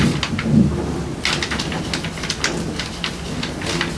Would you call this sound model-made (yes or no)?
no